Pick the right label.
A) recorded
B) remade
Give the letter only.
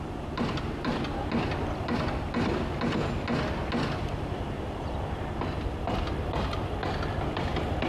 A